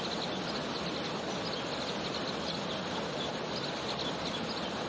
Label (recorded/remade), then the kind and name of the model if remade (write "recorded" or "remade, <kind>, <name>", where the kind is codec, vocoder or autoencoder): recorded